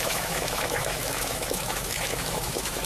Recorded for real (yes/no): no